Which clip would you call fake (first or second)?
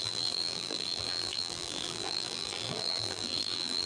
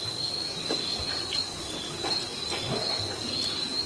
first